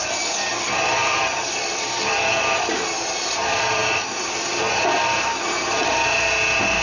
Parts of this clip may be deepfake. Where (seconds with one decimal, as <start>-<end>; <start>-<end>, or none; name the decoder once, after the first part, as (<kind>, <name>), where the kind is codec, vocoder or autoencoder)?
1.0-1.7 (vocoder, BigVGAN v2)